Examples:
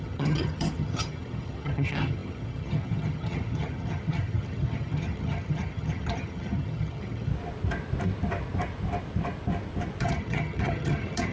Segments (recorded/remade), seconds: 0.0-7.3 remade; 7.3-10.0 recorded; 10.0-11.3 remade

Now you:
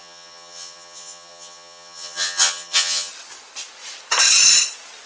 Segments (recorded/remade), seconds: 0.0-3.1 remade; 3.1-5.1 recorded

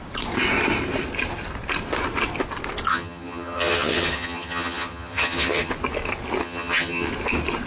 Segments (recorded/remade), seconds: 0.0-2.9 recorded; 2.9-5.7 remade; 5.7-6.4 recorded; 6.4-7.1 remade; 7.1-7.7 recorded

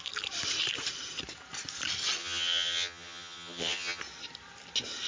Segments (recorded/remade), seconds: 0.0-2.2 recorded; 2.2-4.0 remade; 4.0-5.1 recorded

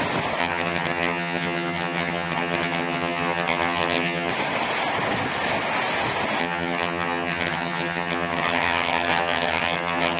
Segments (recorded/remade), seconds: 0.0-0.4 recorded; 0.4-4.3 remade; 4.3-6.4 recorded; 6.4-10.2 remade

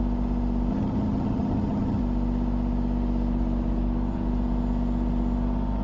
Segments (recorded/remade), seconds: 0.0-0.7 recorded; 0.7-2.0 remade; 2.0-5.8 recorded